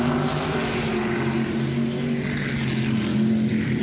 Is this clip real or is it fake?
real